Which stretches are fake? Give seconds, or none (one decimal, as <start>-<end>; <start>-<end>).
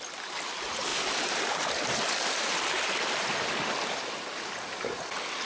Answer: none